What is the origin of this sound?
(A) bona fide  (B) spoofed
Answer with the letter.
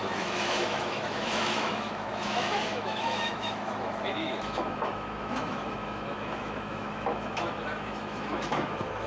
B